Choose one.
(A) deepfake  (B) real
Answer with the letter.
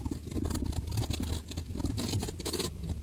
B